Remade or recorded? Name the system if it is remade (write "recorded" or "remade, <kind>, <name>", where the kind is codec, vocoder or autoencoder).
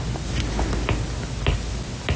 recorded